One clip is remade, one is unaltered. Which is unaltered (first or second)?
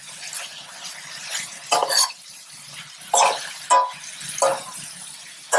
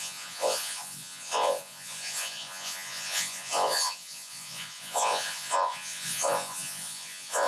first